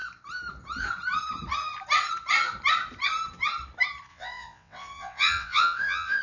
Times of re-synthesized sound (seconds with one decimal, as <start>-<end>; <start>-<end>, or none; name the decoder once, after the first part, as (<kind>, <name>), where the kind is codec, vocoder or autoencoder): 4.1-6.2 (vocoder, WaveNeXt)